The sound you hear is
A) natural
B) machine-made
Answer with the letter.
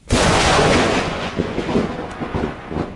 B